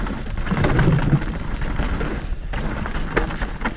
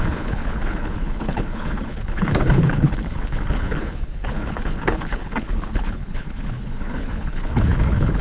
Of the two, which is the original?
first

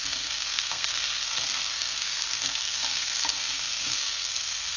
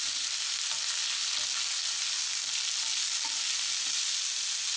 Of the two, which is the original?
second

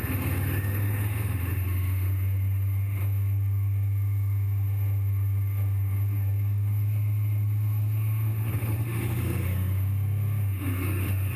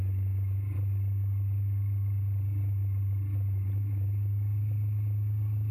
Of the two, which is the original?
second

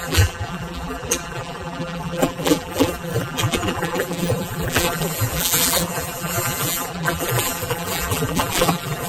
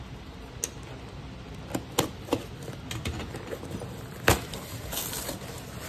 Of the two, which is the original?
second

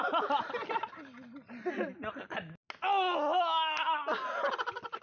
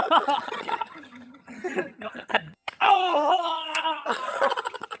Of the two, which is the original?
first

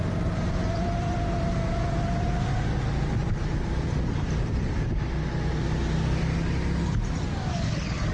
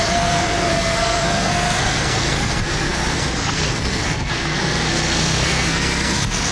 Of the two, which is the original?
first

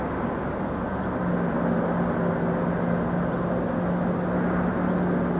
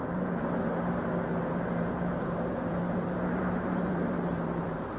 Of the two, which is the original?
first